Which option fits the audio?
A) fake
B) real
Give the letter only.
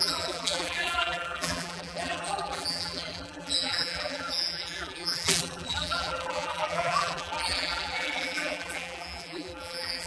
A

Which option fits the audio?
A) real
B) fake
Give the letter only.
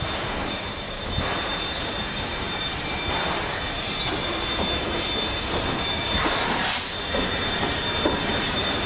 B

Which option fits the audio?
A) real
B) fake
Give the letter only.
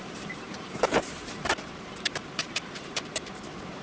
B